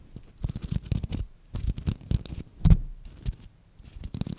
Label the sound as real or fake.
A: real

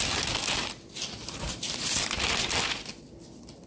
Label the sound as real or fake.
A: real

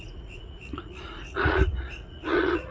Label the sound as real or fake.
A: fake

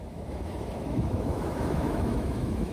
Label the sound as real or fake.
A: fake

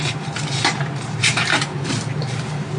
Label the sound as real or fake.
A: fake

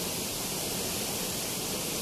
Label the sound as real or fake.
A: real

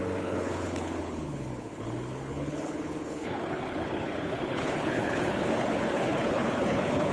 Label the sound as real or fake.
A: fake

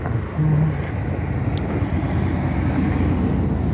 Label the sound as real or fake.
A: real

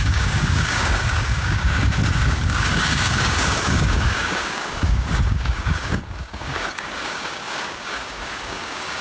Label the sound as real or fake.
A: fake